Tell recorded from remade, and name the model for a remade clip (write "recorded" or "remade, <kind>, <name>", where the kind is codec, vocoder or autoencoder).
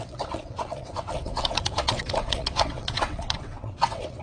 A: remade, vocoder, WaveNeXt